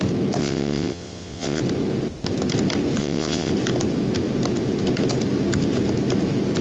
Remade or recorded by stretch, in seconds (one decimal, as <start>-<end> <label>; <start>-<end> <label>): 0.0-0.4 recorded; 0.4-1.6 remade; 1.6-3.0 recorded; 3.0-3.5 remade; 3.5-6.6 recorded